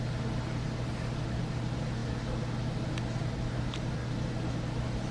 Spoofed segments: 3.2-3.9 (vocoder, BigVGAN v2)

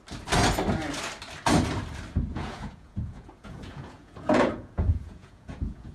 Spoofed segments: 2.3-5.9 (vocoder, Vocos)

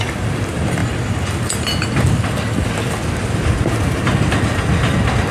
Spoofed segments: none

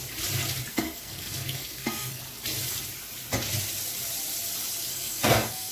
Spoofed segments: 0.7-2.2 (codec, SNAC); 4.9-5.7

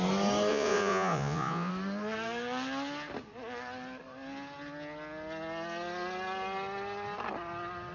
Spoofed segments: 0.5-1.7 (vocoder, Vocos)

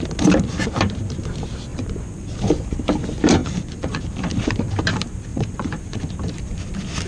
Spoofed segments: 1.7-2.3 (vocoder, Vocos); 3.4-4.0; 5.3-6.1

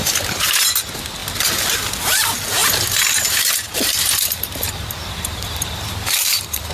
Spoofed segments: 0.0-0.7 (vocoder, BigVGAN v2); 2.6-6.7

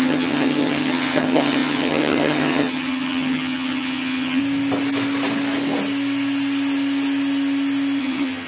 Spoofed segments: 0.0-4.4 (vocoder, HiFi-GAN); 8.0-8.5